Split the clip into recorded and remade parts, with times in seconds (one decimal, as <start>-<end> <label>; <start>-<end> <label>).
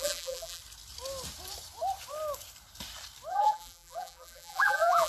0.0-0.6 remade; 0.6-3.3 recorded; 3.3-5.1 remade